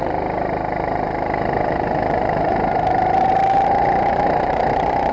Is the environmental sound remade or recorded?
remade